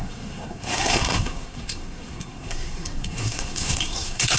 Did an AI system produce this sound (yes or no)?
yes